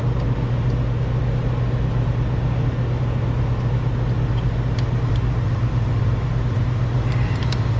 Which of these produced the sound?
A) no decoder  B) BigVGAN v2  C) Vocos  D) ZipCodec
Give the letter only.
A